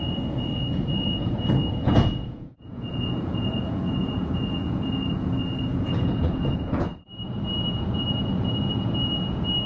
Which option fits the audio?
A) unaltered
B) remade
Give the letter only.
B